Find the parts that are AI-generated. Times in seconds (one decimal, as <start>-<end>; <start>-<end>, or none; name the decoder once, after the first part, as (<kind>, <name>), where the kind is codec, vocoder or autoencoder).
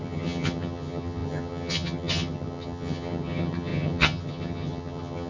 0.0-5.3 (vocoder, HiFi-GAN)